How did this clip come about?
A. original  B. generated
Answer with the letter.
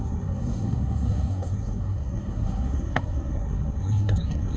B